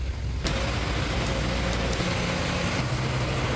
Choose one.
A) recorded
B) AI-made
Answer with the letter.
A